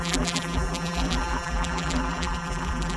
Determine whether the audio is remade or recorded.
remade